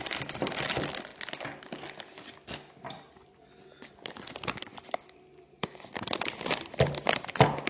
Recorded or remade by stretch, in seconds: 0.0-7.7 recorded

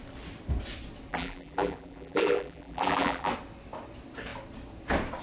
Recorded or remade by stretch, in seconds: 0.0-1.1 recorded; 1.1-3.3 remade; 3.3-5.2 recorded

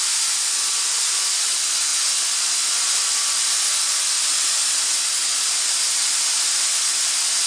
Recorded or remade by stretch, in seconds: 0.0-7.5 recorded